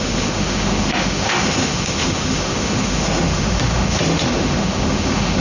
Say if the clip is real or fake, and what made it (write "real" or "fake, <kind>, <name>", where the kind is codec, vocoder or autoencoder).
fake, autoencoder, DAC-VAE